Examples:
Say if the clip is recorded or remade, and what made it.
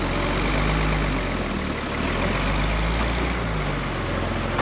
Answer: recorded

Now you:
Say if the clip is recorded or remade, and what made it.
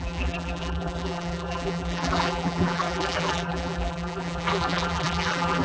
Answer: remade, vocoder, BigVGAN v2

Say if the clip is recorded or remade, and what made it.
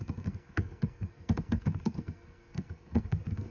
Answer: remade, codec, SNAC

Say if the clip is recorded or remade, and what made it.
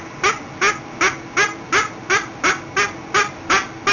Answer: recorded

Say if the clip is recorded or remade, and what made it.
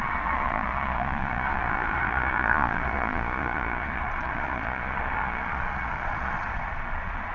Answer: remade, vocoder, Vocos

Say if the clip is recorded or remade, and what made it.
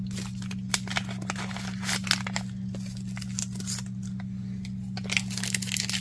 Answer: recorded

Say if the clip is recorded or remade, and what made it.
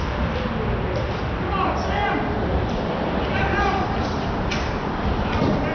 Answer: recorded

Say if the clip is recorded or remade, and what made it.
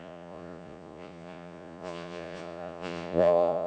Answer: remade, vocoder, Vocos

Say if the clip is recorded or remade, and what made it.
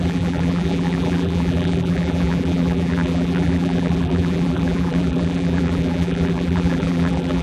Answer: remade, vocoder, BigVGAN v2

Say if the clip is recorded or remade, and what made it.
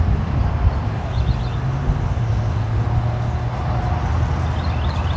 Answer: recorded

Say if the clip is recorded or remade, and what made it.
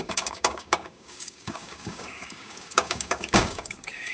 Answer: remade, codec, DAC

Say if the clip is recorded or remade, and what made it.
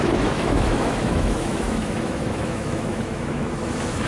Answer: remade, autoencoder, DAC-VAE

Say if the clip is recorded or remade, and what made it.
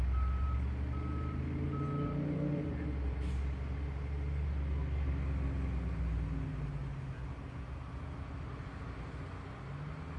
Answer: recorded